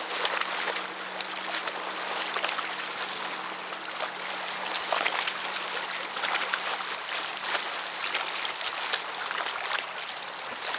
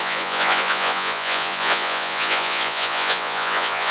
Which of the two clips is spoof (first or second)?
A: second